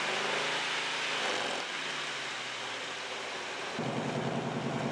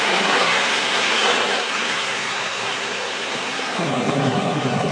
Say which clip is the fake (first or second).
second